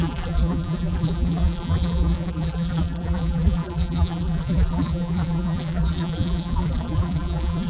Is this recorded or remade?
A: remade